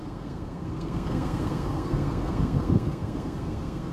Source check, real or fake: fake